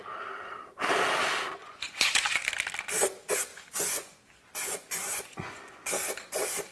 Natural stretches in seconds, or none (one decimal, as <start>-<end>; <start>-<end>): 0.0-1.6; 2.5-3.5; 5.9-6.7